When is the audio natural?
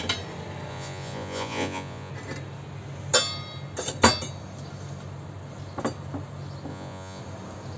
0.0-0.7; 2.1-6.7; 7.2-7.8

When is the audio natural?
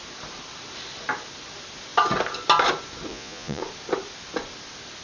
0.0-3.1; 3.6-5.0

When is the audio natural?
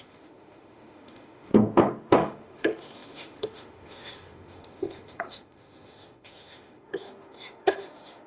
1.5-2.1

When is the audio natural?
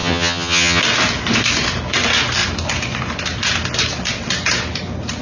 0.8-5.2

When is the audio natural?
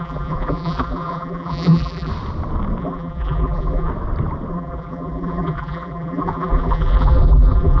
2.1-2.8; 3.9-4.5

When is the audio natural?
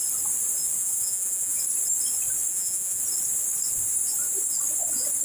0.0-0.8; 1.6-2.5; 3.0-5.2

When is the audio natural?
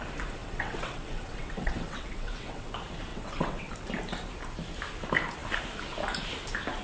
0.0-0.4; 2.7-3.1; 3.7-6.8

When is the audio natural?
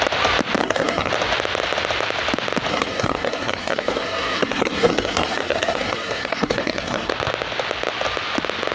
0.0-0.6; 1.1-2.7; 7.1-8.7